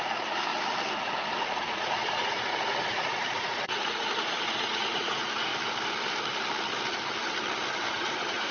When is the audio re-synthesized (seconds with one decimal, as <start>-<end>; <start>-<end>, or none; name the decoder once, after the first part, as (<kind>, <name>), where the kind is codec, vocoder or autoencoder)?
0.0-0.5 (vocoder, Vocos); 1.0-5.5; 7.9-8.5